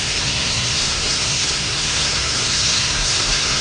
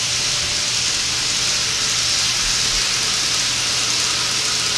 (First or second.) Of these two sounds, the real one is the second